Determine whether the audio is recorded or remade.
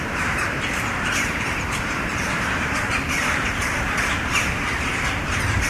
remade